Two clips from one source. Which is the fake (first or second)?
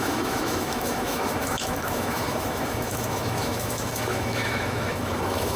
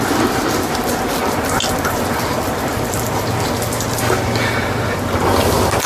first